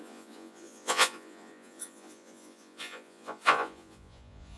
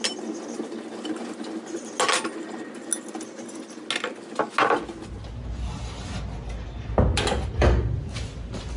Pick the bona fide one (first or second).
second